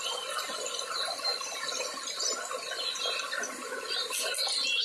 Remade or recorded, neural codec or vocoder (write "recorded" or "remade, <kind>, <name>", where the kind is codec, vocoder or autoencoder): recorded